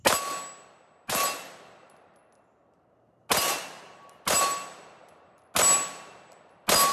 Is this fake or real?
real